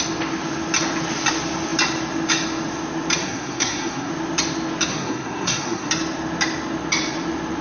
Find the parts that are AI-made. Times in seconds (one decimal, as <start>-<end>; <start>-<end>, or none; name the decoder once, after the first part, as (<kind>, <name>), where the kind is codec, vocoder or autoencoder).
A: 3.2-4.1 (codec, SNAC); 4.9-5.9